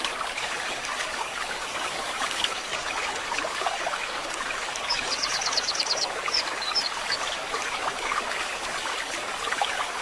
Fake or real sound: fake